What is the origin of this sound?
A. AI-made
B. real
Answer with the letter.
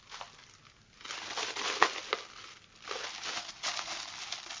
B